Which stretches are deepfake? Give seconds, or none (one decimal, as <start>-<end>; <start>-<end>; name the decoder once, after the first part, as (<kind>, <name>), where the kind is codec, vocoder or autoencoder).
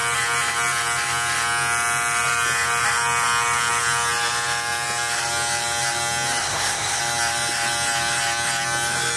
6.4-7.0 (codec, SNAC)